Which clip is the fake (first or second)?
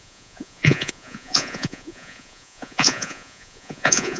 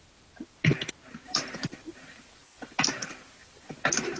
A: first